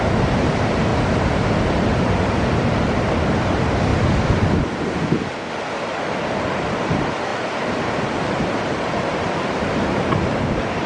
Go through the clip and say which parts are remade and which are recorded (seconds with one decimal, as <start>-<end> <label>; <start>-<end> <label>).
0.0-3.9 remade; 3.9-5.8 recorded; 5.8-10.9 remade